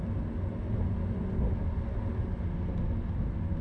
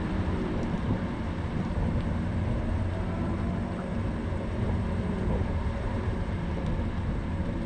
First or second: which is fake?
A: second